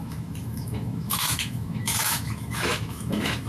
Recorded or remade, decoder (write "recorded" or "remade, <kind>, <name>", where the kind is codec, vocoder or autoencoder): remade, autoencoder, DAC-VAE